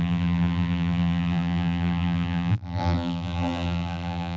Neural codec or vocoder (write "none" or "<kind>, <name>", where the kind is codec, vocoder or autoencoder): vocoder, BigVGAN v2